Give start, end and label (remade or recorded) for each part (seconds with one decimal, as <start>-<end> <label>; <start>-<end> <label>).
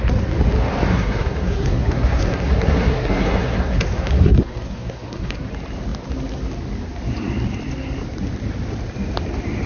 0.0-0.9 recorded; 0.9-5.5 remade; 5.5-9.7 recorded